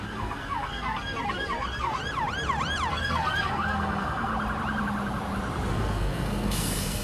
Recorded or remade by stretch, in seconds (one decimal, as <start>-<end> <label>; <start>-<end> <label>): 0.0-2.0 remade; 2.0-2.9 recorded; 2.9-4.3 remade; 4.3-5.7 recorded; 5.7-7.0 remade